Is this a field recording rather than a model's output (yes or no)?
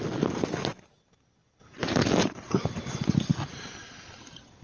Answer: yes